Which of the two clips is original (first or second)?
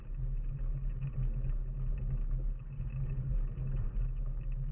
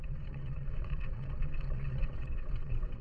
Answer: first